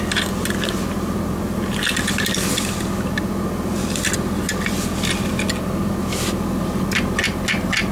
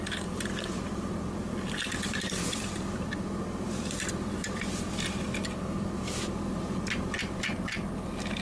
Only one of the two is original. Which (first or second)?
first